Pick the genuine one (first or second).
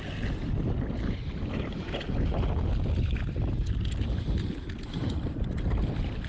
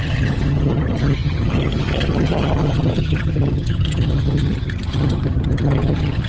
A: first